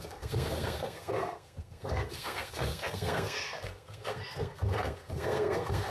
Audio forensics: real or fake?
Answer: fake